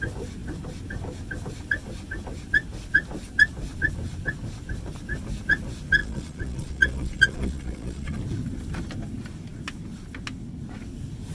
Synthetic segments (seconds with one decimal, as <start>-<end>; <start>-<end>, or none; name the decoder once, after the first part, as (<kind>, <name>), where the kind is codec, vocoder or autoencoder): 6.0-8.2 (vocoder, Vocos)